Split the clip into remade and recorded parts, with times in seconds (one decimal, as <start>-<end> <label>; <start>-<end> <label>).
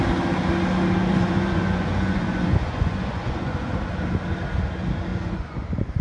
0.0-1.1 recorded; 1.1-3.8 remade; 3.8-5.1 recorded; 5.1-6.0 remade